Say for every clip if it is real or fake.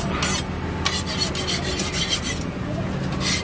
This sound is real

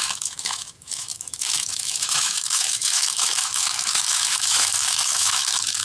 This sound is fake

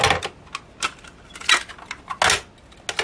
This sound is real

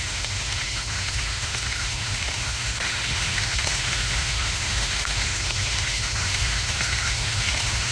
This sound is fake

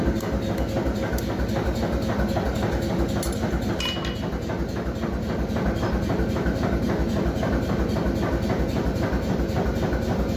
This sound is real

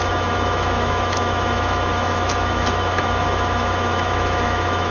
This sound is fake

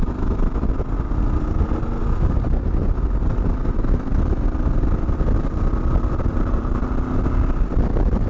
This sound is real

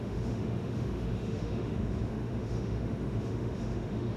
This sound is fake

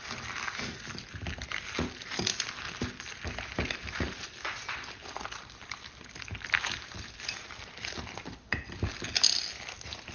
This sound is real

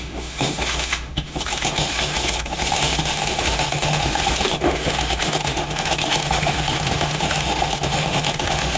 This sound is fake